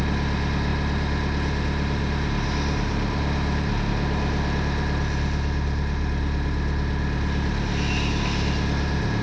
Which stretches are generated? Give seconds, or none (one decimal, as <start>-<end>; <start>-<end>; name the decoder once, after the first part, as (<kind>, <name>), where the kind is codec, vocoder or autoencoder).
none

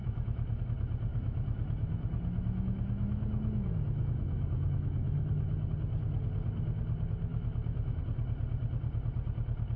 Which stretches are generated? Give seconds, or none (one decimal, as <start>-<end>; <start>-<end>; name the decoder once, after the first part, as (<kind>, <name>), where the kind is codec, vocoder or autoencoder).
0.0-0.6 (autoencoder, DAC-VAE); 1.1-5.7; 7.3-8.0

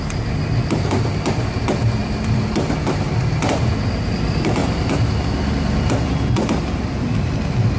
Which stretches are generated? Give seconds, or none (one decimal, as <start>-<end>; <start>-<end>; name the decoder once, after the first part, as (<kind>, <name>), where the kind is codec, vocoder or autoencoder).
none